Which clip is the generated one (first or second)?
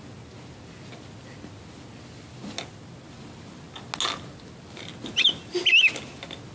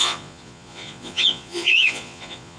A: second